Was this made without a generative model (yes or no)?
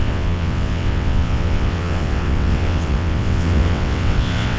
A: no